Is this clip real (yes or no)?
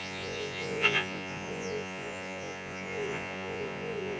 no